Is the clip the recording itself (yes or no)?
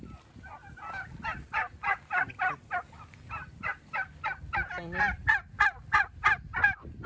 yes